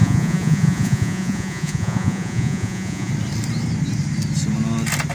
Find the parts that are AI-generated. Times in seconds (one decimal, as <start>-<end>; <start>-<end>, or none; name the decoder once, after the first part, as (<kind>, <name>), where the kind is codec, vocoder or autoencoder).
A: 0.0-3.1 (vocoder, Vocos)